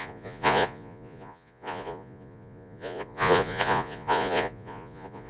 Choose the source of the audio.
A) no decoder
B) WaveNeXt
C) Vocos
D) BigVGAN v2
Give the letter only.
C